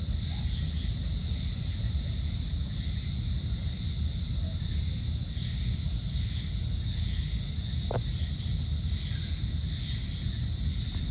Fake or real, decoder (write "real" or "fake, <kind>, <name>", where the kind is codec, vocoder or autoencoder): real